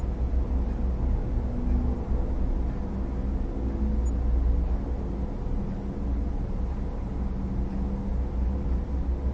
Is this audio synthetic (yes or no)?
no